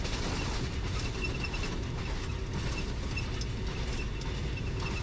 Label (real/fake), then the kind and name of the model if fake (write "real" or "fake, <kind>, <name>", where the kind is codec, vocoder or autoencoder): real